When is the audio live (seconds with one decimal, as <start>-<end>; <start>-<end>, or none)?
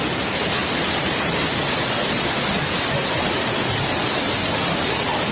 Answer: 0.0-5.3